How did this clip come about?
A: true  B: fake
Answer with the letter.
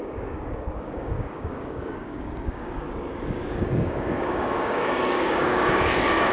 B